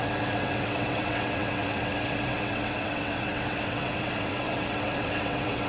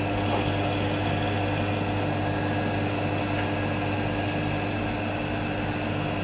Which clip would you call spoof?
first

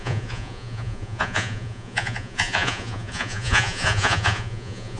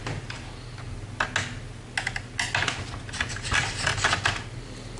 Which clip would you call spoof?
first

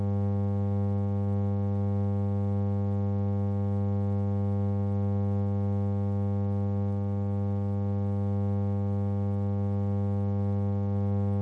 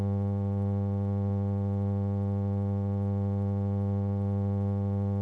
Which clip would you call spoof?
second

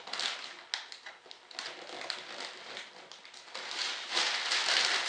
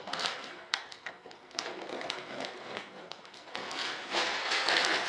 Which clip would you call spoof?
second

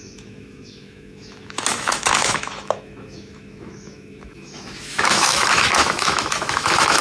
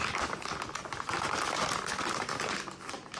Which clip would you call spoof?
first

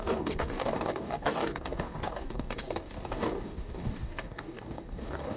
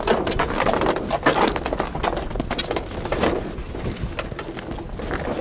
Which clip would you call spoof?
first